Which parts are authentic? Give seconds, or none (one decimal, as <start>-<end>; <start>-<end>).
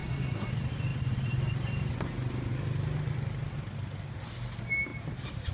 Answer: 0.5-5.5